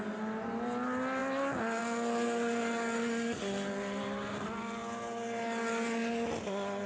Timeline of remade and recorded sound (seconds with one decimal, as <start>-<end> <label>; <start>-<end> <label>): 0.0-6.9 recorded